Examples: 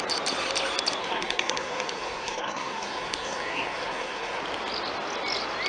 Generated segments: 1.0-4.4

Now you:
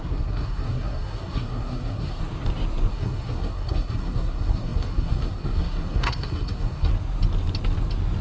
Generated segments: 0.0-2.2; 2.9-6.9